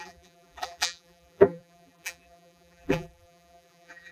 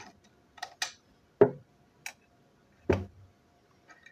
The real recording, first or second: second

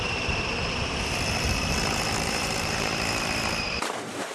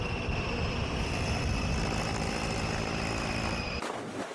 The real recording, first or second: second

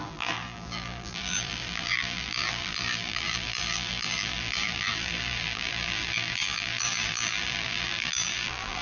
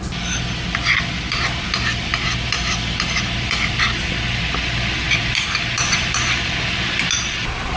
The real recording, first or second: second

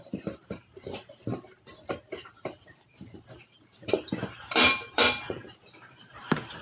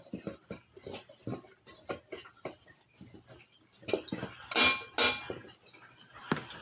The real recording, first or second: second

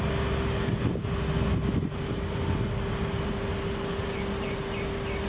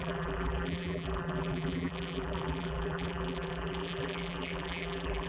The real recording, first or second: first